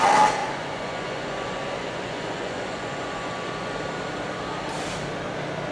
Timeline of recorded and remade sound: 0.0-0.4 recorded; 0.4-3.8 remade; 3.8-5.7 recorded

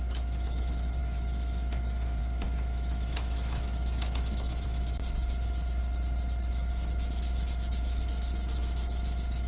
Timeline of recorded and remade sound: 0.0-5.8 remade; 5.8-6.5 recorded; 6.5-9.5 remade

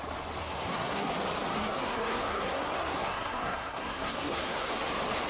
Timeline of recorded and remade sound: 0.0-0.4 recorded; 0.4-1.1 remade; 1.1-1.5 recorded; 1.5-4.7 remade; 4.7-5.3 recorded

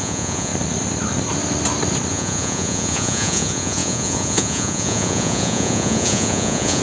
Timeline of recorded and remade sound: 0.0-0.5 remade; 0.5-2.1 recorded; 2.1-6.8 remade

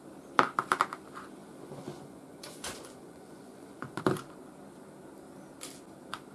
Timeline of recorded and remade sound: 0.0-1.4 recorded; 1.4-4.0 remade; 4.0-6.3 recorded

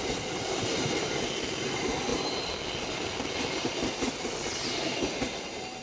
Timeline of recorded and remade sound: 0.0-5.8 recorded

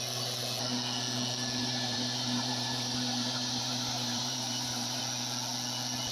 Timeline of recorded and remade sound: 0.0-1.6 recorded; 1.6-5.0 remade; 5.0-6.1 recorded

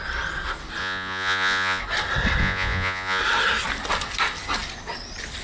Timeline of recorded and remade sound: 0.0-0.8 recorded; 0.8-1.8 remade; 1.8-2.4 recorded; 2.4-3.2 remade; 3.2-5.4 recorded